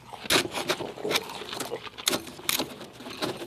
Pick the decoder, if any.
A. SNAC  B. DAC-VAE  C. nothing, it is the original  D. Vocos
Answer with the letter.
C